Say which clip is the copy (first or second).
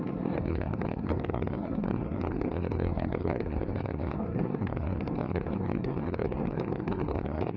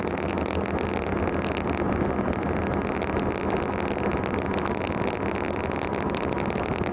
first